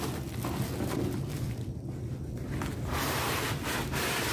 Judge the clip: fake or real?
real